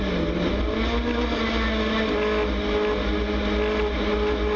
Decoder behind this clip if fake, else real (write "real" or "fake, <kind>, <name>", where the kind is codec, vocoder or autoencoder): real